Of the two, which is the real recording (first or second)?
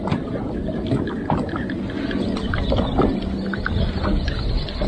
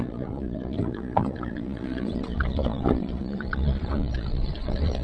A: first